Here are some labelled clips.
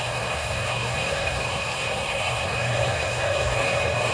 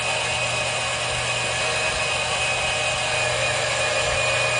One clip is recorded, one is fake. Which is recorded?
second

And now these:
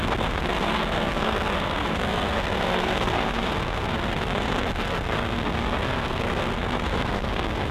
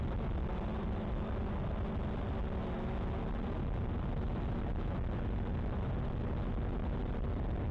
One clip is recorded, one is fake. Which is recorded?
second